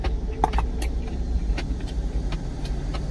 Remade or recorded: remade